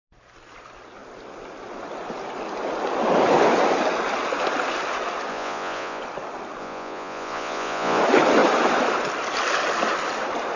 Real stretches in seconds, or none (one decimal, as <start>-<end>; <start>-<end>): 0.0-5.3; 6.0-6.6; 8.0-10.6